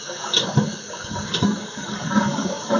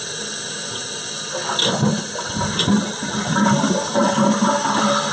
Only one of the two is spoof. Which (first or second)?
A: first